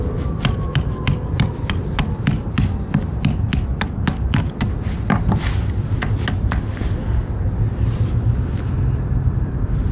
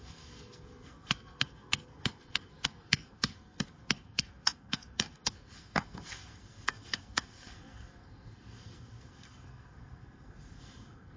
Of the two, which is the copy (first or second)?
second